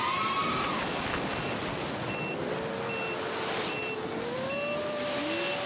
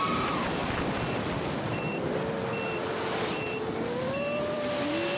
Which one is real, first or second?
first